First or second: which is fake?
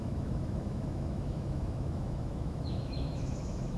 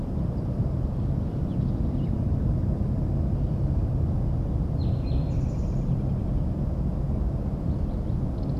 first